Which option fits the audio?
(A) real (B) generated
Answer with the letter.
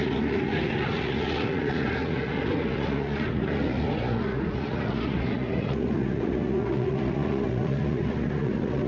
B